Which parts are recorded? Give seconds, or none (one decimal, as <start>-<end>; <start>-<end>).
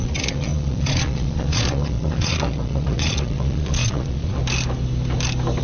4.4-5.6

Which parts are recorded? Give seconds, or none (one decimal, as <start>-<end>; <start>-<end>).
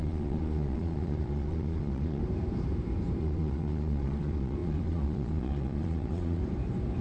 2.2-3.2; 6.4-7.0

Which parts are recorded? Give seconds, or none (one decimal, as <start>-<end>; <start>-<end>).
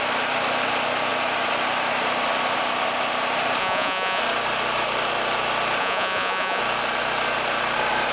0.0-3.6; 4.2-5.8; 6.6-8.1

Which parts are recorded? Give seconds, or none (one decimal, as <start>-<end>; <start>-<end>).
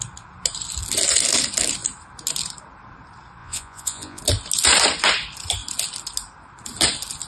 0.0-3.4; 4.2-7.3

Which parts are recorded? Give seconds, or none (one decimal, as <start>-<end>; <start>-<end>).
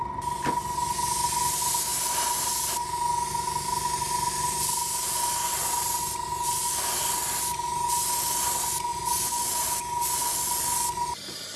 0.0-8.9; 9.5-11.6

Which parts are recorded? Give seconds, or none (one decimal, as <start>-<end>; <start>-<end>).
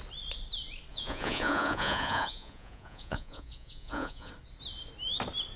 0.0-0.9; 4.3-5.6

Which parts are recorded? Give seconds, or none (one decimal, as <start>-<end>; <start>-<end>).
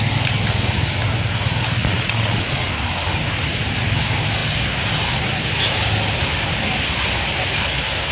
0.0-1.8; 2.7-8.1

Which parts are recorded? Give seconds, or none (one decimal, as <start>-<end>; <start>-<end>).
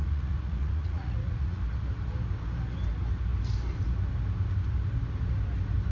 1.6-5.9